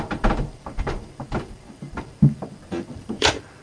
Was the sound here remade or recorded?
remade